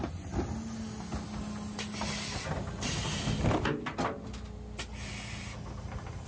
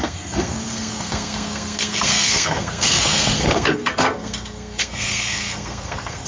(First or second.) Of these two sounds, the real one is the first